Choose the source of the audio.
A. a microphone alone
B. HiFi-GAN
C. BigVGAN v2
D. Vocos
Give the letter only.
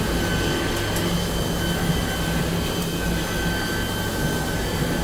A